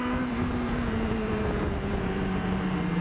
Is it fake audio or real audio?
fake